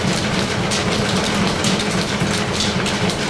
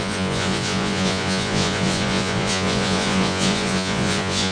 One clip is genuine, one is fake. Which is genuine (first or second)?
first